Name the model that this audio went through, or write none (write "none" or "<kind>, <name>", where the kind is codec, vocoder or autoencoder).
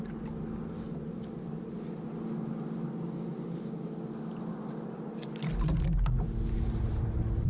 none